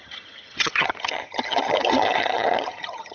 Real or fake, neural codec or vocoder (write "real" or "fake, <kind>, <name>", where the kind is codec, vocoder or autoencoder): fake, vocoder, HiFi-GAN